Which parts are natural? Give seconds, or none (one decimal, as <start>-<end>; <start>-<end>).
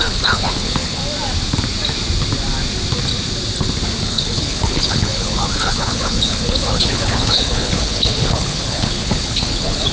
1.0-4.0